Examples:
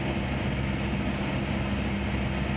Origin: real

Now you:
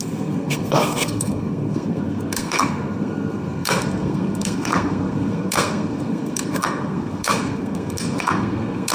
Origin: fake